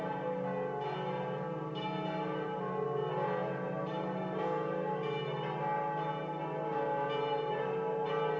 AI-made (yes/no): no